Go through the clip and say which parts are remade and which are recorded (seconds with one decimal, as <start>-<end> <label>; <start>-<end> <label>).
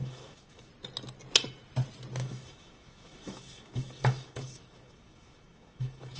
0.0-0.7 remade; 0.7-2.2 recorded; 2.2-6.2 remade